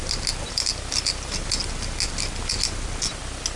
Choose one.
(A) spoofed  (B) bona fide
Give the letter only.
B